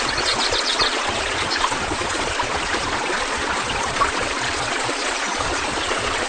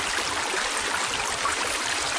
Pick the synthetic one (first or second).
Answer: first